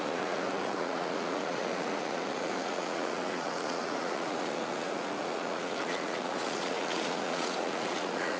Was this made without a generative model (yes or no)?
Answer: no